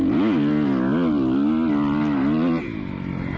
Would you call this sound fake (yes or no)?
no